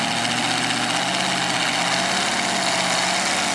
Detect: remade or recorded recorded